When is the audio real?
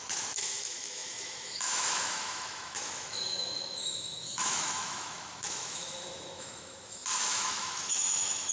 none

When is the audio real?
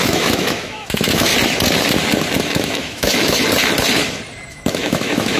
1.3-2.4; 3.4-4.5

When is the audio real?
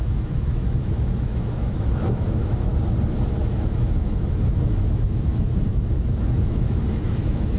2.7-3.4